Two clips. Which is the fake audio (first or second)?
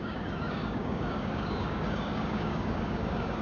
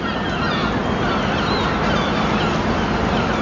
first